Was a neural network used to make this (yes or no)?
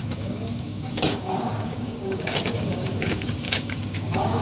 yes